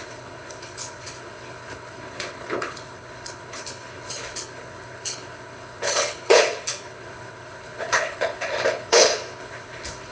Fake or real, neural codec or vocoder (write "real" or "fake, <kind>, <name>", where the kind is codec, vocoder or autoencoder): fake, codec, HILCodec